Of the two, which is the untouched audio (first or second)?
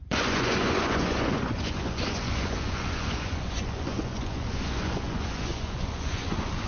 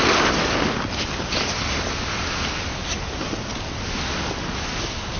second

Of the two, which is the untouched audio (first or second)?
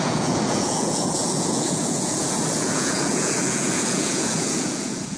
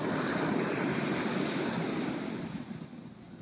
second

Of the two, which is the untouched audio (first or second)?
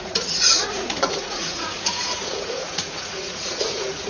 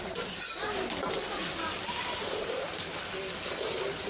second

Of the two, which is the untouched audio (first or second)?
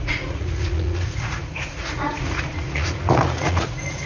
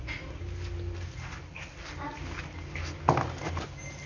second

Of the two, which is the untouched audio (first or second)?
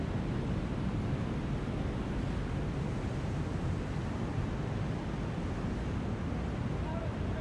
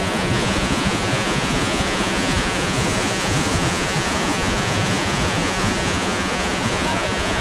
first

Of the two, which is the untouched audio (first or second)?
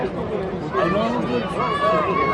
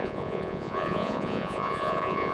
first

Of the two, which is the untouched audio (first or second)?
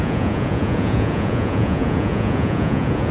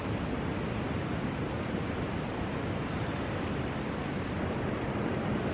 second